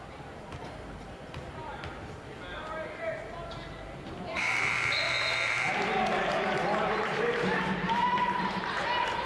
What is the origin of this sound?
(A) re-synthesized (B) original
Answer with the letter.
A